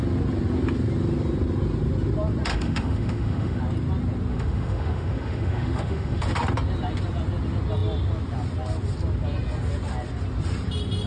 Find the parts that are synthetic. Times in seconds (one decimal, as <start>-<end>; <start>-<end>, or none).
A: 2.5-3.6; 4.3-6.2